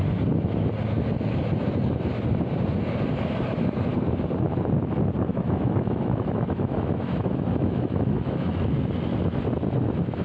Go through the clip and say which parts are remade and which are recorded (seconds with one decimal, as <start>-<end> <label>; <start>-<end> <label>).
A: 0.0-5.3 recorded; 5.3-8.5 remade; 8.5-10.2 recorded